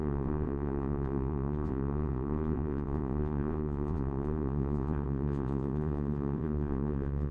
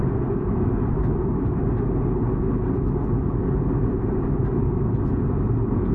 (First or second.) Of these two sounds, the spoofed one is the first